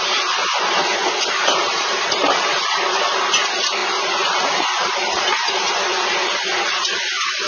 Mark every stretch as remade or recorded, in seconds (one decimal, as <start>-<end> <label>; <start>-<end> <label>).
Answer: 0.0-0.4 remade; 0.4-1.2 recorded; 1.2-7.5 remade